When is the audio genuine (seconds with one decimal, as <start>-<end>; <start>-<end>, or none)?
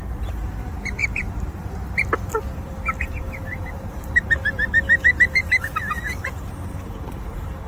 0.0-1.0; 1.6-3.4; 6.5-7.7